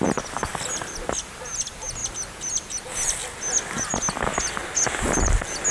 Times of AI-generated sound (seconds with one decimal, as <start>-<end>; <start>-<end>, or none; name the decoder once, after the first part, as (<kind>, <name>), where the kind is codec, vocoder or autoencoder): none